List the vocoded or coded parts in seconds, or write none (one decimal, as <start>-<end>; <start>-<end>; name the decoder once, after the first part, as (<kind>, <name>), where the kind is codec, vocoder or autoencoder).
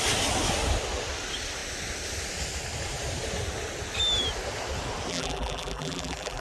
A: 5.1-6.4 (vocoder, BigVGAN v2)